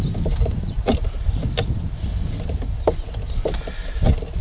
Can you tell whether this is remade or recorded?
recorded